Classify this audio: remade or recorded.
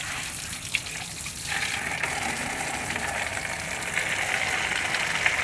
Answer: recorded